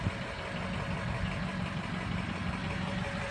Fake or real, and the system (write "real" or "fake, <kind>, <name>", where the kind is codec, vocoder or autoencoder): real